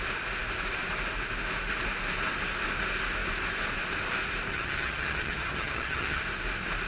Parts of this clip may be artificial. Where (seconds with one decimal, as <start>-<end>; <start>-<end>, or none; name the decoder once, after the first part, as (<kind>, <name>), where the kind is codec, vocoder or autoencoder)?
4.5-6.2 (vocoder, HiFi-GAN)